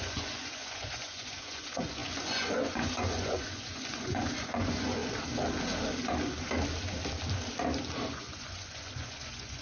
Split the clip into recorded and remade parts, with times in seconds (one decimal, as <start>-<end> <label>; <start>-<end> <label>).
0.0-5.0 remade; 5.0-8.1 recorded; 8.1-9.6 remade